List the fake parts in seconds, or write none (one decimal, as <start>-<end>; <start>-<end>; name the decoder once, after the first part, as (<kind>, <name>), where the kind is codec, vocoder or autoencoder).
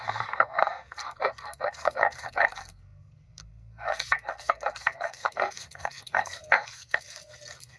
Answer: 0.0-7.8 (codec, SNAC)